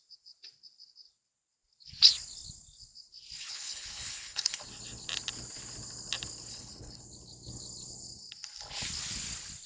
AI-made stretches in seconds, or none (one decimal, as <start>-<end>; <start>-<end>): 3.4-4.6; 6.5-7.0